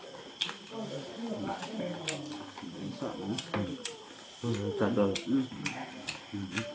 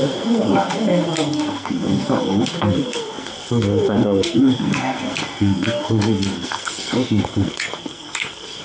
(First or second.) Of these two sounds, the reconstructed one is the second